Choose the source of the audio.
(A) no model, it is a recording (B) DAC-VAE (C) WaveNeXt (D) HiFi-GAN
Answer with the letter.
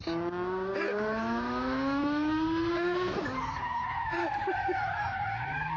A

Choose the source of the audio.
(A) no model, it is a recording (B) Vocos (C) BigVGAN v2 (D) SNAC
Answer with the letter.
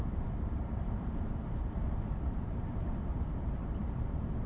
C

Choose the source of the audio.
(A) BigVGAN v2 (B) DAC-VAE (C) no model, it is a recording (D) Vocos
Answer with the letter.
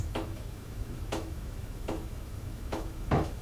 B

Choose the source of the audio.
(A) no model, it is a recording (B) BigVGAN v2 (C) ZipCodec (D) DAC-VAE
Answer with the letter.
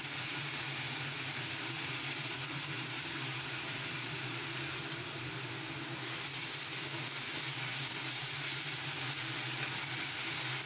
A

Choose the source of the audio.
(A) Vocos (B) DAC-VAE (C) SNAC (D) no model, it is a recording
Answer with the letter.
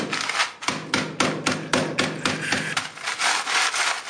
D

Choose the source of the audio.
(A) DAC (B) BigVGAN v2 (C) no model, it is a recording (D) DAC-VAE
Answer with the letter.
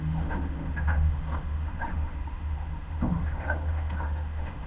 D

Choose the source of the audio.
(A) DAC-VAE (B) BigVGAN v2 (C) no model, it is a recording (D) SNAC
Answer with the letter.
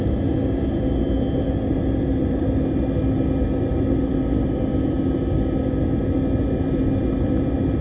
C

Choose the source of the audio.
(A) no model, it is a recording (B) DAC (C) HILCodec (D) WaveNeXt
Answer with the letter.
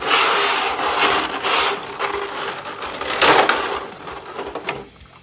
A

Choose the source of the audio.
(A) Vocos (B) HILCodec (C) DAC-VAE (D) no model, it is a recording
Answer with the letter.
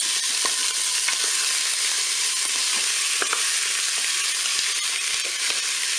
D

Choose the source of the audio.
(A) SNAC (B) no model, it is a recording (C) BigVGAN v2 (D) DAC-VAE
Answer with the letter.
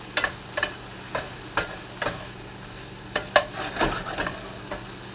B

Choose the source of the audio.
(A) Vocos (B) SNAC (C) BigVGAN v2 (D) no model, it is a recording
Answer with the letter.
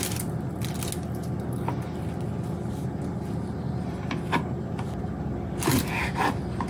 D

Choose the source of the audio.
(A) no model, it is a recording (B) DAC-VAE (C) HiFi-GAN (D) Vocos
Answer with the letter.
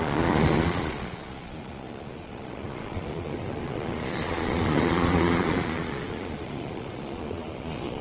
D